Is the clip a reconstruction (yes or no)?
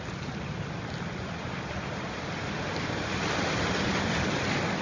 no